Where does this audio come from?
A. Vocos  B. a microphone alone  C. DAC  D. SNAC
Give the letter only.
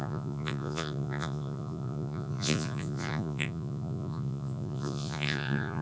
A